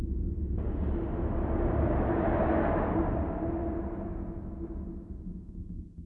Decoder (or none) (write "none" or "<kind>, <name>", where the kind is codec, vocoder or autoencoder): none